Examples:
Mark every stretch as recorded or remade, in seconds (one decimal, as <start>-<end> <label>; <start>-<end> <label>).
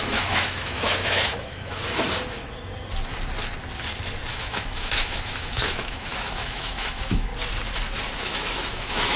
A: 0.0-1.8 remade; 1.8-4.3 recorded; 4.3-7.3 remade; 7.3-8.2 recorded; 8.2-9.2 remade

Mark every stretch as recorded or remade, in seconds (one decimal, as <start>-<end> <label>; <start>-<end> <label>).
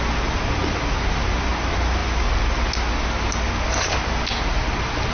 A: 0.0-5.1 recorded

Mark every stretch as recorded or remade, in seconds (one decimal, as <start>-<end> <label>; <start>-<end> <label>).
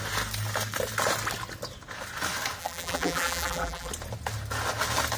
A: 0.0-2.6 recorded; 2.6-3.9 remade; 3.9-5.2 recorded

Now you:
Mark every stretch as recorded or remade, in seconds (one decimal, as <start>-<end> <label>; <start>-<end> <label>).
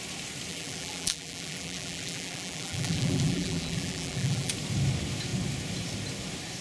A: 0.0-0.5 recorded; 0.5-4.5 remade; 4.5-6.6 recorded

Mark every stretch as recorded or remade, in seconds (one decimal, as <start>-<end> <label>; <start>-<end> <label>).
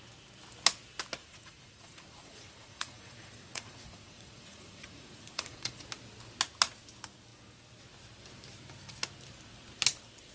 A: 0.0-1.2 recorded; 1.2-5.8 remade; 5.8-10.3 recorded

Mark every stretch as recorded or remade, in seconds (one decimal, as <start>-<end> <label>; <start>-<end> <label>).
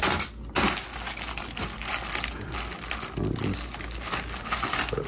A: 0.0-5.1 recorded